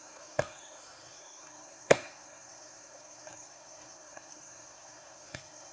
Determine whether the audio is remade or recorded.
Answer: remade